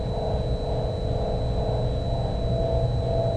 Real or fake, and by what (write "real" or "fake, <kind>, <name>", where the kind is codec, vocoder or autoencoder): real